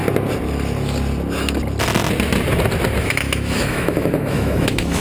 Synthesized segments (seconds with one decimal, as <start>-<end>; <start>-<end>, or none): 3.0-5.0